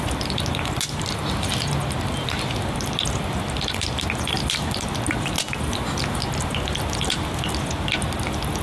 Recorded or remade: recorded